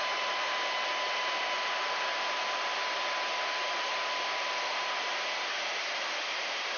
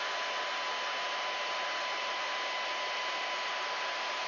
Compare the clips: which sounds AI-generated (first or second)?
first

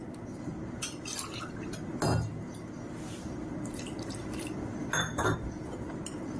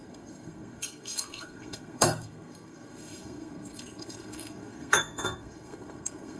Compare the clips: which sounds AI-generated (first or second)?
second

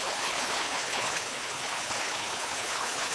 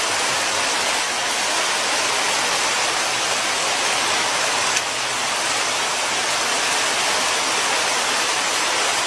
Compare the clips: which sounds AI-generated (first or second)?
first